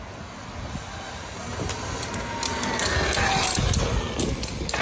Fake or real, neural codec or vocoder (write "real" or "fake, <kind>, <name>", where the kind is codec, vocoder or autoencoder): real